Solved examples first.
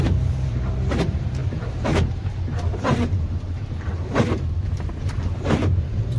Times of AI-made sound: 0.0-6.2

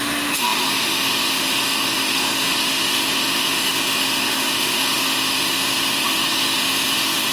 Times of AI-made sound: 0.0-7.3

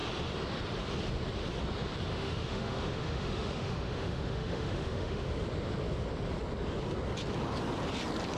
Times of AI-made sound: 2.1-5.3